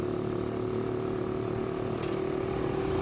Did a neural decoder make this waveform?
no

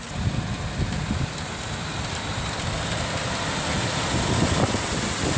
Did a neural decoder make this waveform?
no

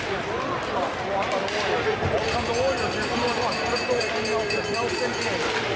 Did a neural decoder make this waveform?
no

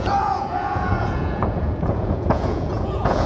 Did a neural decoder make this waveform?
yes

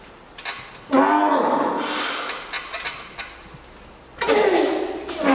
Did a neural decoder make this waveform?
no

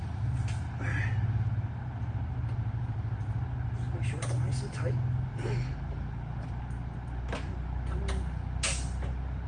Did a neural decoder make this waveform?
no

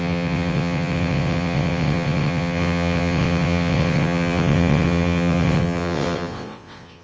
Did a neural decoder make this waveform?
yes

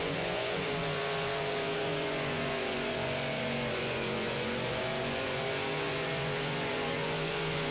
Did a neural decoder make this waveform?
yes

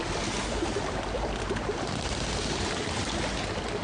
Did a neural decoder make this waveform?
no